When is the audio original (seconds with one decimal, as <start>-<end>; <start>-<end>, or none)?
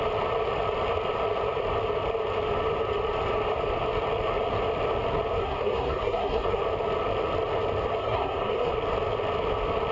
0.0-5.4; 6.6-8.0; 8.7-9.9